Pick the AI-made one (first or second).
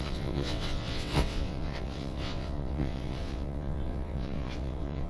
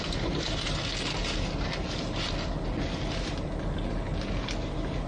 first